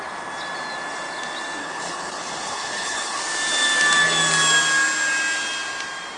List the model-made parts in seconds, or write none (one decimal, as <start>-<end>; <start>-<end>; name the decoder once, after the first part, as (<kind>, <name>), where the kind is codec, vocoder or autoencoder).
1.6-3.2 (codec, HILCodec)